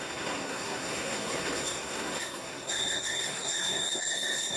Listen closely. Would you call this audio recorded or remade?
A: remade